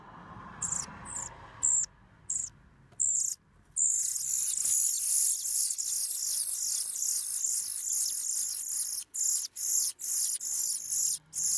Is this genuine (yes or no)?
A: yes